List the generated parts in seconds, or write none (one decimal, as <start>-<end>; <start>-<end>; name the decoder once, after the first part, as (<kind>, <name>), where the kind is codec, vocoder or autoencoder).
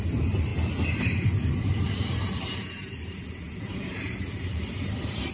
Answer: 0.0-5.3 (vocoder, BigVGAN v2)